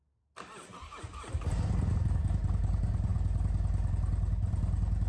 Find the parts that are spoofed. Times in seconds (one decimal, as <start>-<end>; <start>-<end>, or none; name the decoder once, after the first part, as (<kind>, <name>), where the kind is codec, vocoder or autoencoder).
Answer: none